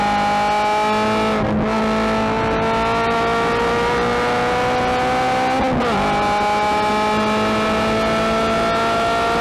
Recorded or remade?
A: recorded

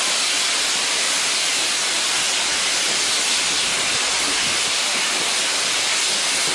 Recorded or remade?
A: recorded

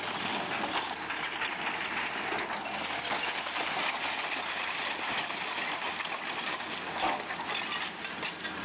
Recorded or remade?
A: recorded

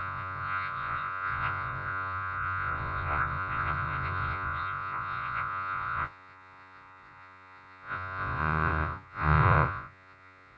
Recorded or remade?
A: remade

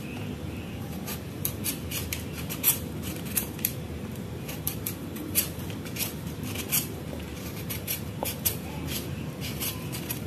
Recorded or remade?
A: remade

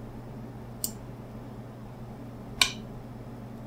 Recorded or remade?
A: recorded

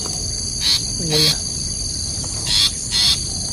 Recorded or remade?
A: recorded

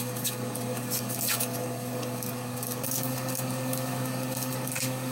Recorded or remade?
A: remade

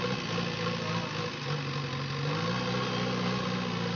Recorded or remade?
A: recorded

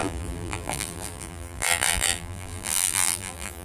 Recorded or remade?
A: remade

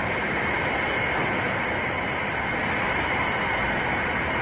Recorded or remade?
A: recorded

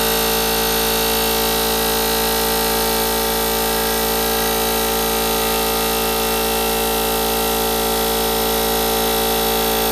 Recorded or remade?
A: recorded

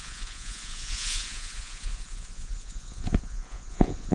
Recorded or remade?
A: remade